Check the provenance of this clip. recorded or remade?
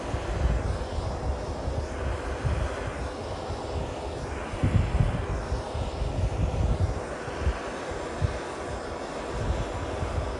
recorded